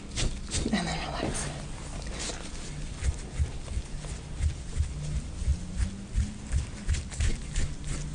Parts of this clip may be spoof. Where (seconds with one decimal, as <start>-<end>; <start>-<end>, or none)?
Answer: none